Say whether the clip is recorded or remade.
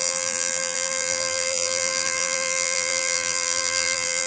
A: remade